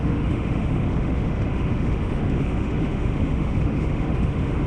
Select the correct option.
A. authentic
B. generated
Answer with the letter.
B